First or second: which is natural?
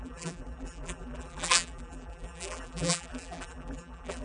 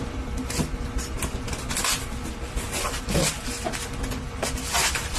second